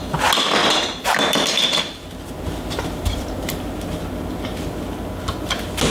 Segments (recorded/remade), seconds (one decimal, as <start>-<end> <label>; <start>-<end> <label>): 0.0-0.6 recorded; 0.6-4.1 remade; 4.1-5.9 recorded